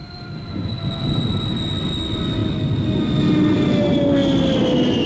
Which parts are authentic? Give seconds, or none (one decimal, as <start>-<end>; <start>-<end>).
0.7-5.1